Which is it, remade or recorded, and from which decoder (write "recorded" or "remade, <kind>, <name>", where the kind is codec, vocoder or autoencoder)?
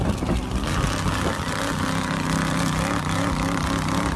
recorded